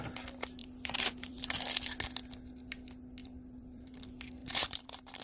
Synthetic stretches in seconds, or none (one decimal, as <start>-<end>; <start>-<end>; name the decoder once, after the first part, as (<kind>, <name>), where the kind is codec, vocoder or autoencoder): 0.6-1.4 (vocoder, BigVGAN v2); 3.2-4.0; 4.4-5.2